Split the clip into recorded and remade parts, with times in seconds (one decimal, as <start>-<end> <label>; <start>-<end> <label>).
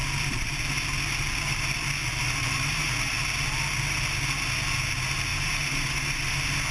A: 0.0-2.1 recorded; 2.1-3.1 remade; 3.1-5.3 recorded; 5.3-6.2 remade; 6.2-6.7 recorded